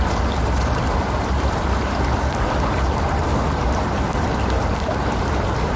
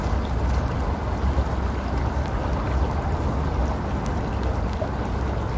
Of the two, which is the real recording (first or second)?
second